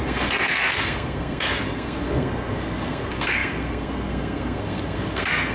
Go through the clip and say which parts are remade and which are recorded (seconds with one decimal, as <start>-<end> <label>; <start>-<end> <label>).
0.0-5.5 remade